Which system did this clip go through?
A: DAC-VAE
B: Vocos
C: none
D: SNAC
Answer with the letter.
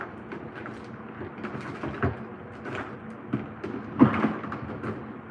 C